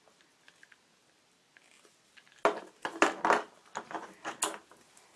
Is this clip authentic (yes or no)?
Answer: yes